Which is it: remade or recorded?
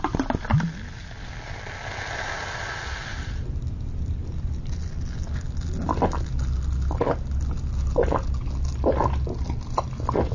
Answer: recorded